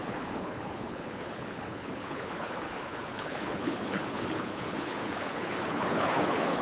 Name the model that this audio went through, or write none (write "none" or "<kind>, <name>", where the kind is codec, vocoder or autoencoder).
codec, HILCodec